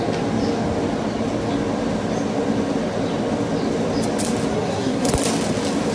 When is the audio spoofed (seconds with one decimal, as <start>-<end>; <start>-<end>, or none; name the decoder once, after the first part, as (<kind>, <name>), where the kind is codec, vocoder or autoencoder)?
4.5-5.1 (codec, SNAC)